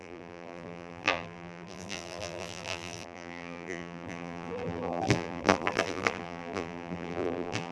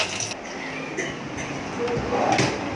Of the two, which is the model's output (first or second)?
first